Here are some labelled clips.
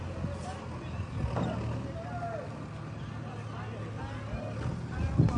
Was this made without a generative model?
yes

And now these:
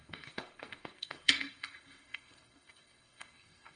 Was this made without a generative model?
no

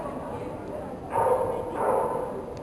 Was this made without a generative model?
yes